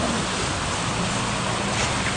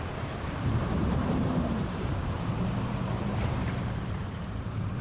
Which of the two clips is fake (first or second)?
second